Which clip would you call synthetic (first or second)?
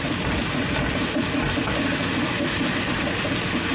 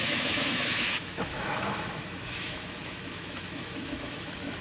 second